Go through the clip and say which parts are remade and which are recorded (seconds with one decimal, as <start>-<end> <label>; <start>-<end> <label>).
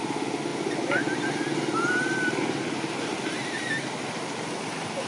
0.0-5.1 recorded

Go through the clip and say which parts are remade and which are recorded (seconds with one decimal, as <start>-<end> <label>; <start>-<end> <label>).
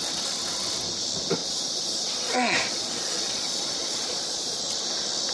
0.0-1.4 recorded; 1.4-4.6 remade; 4.6-5.3 recorded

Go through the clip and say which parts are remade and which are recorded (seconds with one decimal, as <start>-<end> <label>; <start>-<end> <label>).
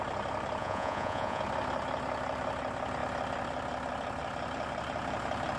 0.0-0.6 recorded; 0.6-1.4 remade; 1.4-5.6 recorded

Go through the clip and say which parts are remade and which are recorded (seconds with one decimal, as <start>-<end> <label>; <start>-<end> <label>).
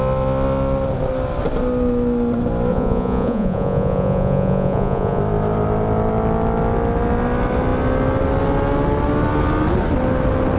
0.0-2.7 recorded; 2.7-5.2 remade; 5.2-10.6 recorded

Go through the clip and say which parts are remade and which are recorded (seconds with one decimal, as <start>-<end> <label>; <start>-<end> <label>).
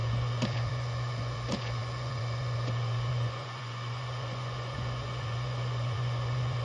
0.0-6.6 remade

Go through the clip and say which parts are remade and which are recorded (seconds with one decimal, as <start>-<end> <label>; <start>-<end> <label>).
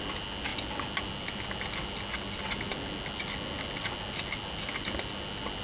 0.0-5.6 recorded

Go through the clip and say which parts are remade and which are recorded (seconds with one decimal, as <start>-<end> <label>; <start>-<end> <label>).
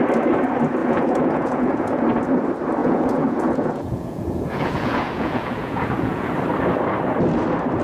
0.0-0.8 recorded; 0.8-2.0 remade; 2.0-2.8 recorded; 2.8-6.3 remade; 6.3-7.8 recorded